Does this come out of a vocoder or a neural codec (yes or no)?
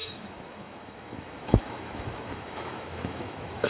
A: yes